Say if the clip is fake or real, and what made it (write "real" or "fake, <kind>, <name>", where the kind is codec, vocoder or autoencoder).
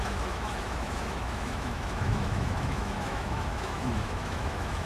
fake, autoencoder, DAC-VAE